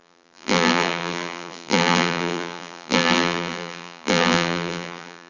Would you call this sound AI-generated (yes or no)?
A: yes